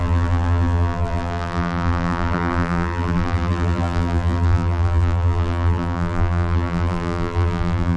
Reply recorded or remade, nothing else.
remade